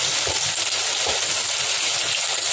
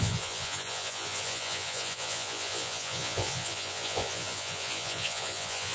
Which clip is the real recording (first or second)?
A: first